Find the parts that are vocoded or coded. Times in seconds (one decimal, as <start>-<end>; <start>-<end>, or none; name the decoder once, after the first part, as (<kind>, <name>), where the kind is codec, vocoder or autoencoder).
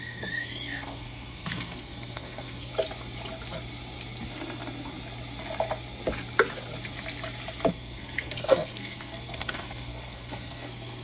0.0-2.7 (codec, SNAC); 7.7-11.0